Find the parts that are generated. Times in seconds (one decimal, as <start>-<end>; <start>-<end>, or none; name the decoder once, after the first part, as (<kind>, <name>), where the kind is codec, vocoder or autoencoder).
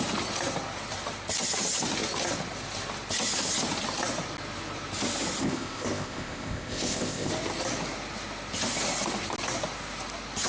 5.4-7.3 (codec, ZipCodec)